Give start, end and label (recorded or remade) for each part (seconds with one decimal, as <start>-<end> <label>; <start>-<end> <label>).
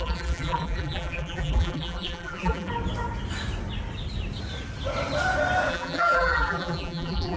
0.0-2.7 remade; 2.7-5.7 recorded; 5.7-7.4 remade